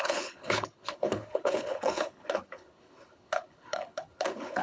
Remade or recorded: remade